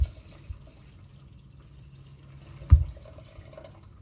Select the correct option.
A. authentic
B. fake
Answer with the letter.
A